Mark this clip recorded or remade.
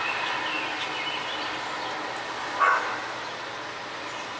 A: recorded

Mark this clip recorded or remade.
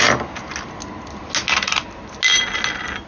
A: recorded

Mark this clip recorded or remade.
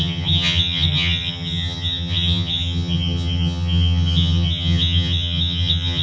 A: remade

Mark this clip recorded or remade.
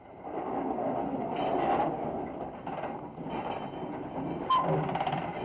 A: recorded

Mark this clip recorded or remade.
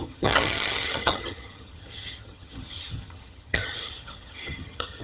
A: remade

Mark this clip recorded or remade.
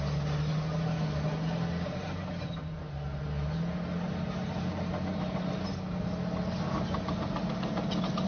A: recorded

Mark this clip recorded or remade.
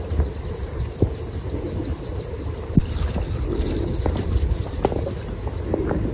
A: recorded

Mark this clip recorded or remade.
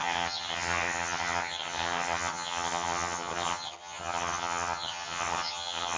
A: remade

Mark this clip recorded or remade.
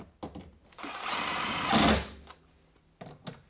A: recorded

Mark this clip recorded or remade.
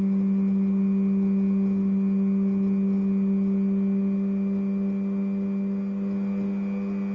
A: recorded